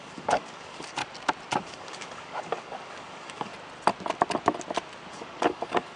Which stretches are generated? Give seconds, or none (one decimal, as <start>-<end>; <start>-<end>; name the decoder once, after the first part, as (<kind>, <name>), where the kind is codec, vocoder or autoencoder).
0.0-1.0 (codec, DAC); 1.6-3.5; 5.1-6.0